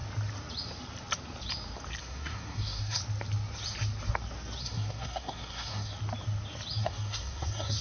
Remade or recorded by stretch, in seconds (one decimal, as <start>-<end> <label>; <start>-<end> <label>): 0.0-2.0 recorded; 2.0-3.0 remade; 3.0-4.6 recorded; 4.6-5.9 remade; 5.9-6.8 recorded; 6.8-7.8 remade